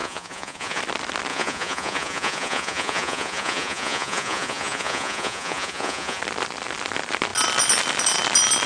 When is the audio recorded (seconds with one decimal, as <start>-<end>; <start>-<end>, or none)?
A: 0.8-1.3; 6.2-8.7

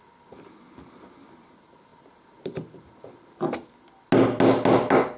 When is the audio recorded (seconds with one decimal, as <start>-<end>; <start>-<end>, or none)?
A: 0.0-5.2

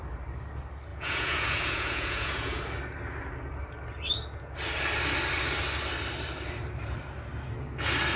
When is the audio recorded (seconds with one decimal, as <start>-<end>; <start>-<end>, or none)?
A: 0.0-0.9; 2.6-8.2

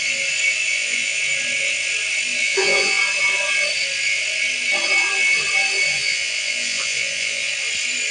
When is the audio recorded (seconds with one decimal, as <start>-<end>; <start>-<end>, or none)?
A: 0.0-0.7; 1.2-2.4; 3.0-5.9; 7.5-8.1

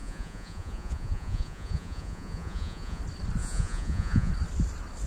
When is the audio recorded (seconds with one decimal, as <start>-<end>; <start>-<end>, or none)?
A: 3.0-3.4; 4.3-5.1

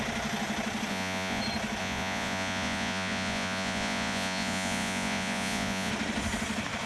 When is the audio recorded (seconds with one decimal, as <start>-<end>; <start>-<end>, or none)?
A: 0.0-0.9; 1.4-1.8; 5.9-6.9

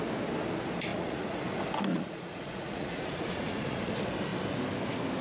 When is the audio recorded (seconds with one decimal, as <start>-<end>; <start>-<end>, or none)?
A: 0.0-0.9; 1.4-1.9; 3.9-5.2